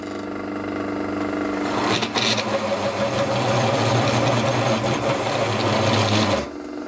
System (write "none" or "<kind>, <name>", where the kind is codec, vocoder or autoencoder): none